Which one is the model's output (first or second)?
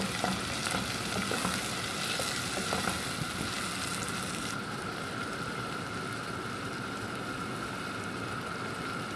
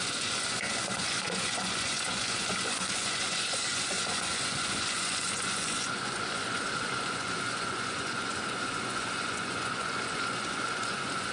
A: second